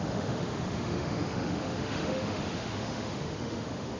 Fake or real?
fake